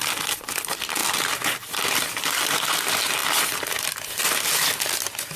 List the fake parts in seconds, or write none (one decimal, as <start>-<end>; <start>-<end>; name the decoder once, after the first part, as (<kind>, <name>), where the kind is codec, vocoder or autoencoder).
none